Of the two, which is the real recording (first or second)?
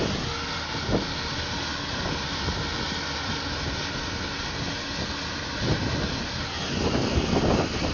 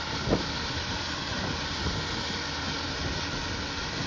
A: first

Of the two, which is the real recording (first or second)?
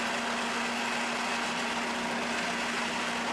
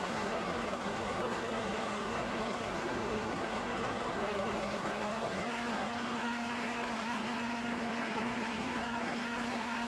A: first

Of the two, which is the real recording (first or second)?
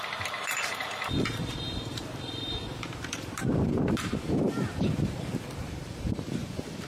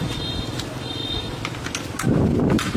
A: second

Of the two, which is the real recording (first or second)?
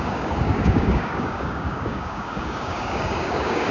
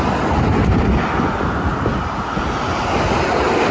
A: second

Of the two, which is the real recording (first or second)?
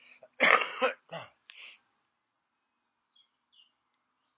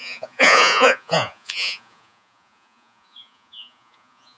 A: first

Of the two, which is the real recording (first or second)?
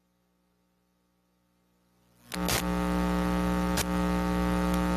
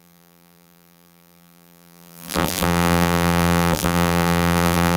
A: first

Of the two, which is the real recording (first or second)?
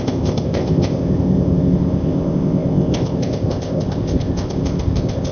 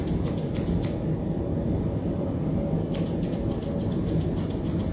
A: second